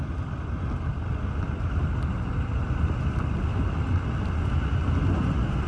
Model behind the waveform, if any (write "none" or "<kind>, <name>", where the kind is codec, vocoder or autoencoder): none